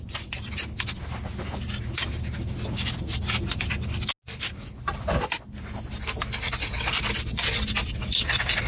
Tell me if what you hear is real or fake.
real